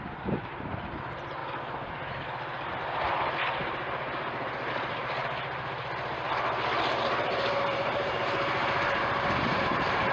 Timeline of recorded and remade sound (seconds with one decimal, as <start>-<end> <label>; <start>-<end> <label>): 0.0-1.4 remade; 1.4-4.7 recorded; 4.7-5.2 remade; 5.2-6.9 recorded; 6.9-10.1 remade